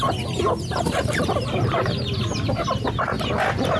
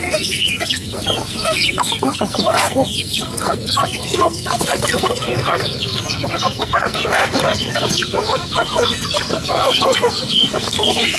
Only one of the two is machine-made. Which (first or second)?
second